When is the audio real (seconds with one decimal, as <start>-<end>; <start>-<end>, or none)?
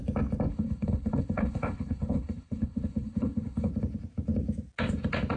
0.0-0.5; 3.7-5.4